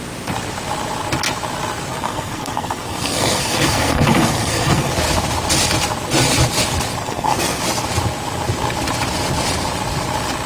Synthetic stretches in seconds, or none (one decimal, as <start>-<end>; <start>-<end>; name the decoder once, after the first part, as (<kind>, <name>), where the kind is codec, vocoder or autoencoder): 1.9-4.9 (codec, SNAC); 7.0-7.6